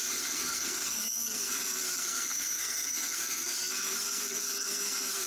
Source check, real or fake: fake